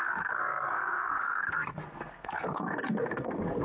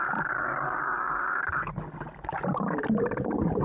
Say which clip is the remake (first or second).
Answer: first